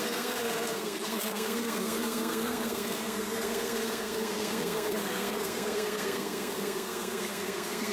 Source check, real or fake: fake